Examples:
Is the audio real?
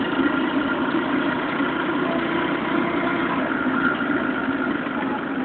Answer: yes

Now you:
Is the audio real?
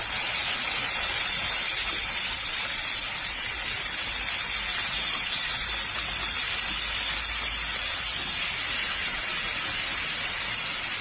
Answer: yes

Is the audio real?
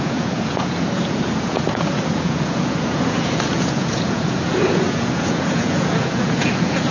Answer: no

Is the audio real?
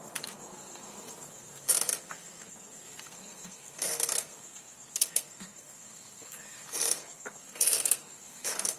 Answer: no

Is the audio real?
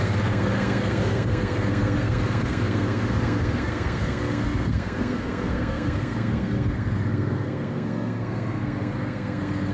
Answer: no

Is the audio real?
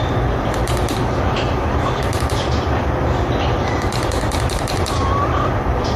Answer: no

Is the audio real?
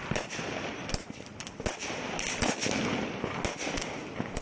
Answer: yes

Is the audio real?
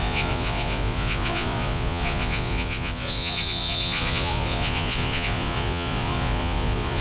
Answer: no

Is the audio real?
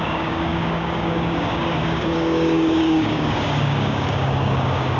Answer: no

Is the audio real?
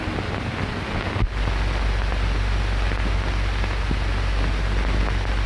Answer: yes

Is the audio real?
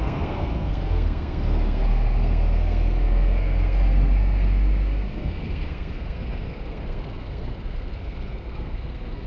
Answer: no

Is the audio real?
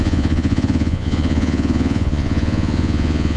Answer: no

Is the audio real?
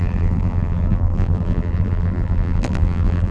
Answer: no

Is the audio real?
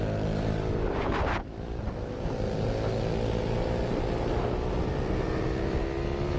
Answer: yes